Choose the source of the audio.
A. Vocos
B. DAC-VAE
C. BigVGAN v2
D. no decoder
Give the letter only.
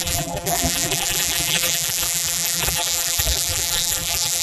C